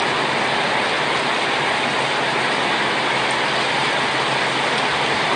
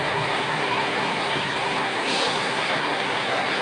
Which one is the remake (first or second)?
second